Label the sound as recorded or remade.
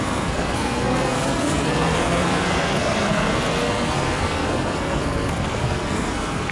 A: remade